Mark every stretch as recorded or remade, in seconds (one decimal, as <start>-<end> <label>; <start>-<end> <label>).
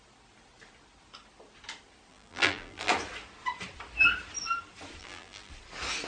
0.0-2.1 recorded; 2.1-2.9 remade; 2.9-5.0 recorded; 5.0-5.5 remade; 5.5-6.1 recorded